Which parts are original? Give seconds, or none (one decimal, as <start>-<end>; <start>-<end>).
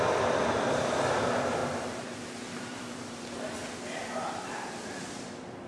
none